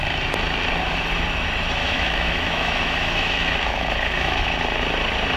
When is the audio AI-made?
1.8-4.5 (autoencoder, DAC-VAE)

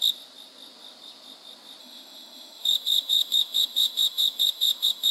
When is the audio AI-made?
1.8-5.1 (autoencoder, DAC-VAE)

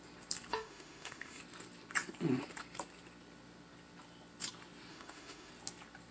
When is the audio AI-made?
0.5-1.4 (autoencoder, DAC-VAE); 4.9-5.5

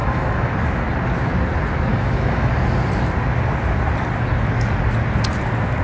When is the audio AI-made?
0.0-0.5 (autoencoder, DAC-VAE); 1.9-2.5

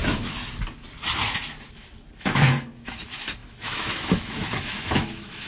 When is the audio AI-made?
0.0-0.4 (autoencoder, DAC-VAE); 2.2-5.5

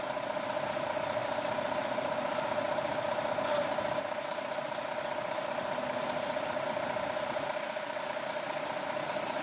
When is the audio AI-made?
none

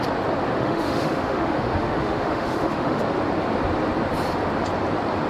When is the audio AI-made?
0.6-3.0 (autoencoder, DAC-VAE)

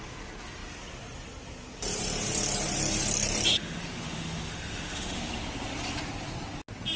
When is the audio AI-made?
3.6-5.3 (autoencoder, DAC-VAE)